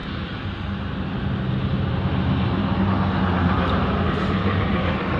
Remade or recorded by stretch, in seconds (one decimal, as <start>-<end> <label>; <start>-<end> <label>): 0.0-2.6 recorded; 2.6-3.3 remade; 3.3-4.4 recorded; 4.4-5.2 remade